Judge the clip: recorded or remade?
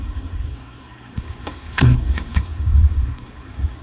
remade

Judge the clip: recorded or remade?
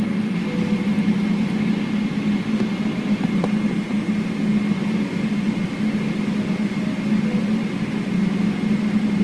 recorded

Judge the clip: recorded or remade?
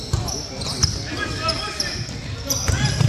recorded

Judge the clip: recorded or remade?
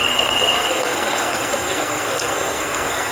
remade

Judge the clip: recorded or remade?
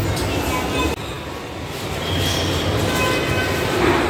recorded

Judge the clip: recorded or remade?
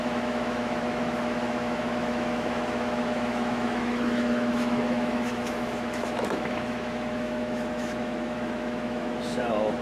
remade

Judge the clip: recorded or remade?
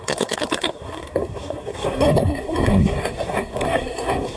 remade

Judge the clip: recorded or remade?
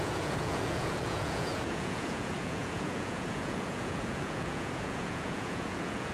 remade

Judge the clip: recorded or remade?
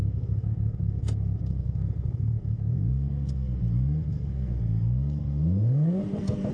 remade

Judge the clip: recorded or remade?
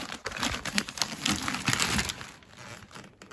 recorded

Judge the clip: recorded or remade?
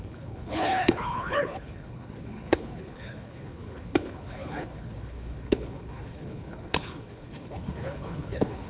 remade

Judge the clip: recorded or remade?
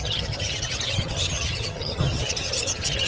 remade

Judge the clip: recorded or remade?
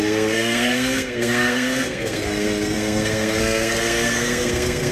remade